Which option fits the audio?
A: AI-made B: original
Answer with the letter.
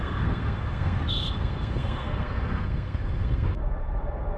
A